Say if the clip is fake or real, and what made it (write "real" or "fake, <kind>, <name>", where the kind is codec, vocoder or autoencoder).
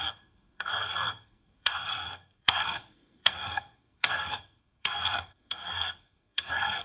fake, codec, SNAC